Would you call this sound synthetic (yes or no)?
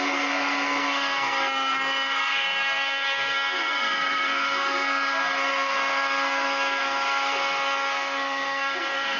yes